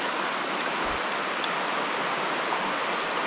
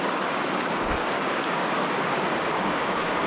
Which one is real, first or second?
first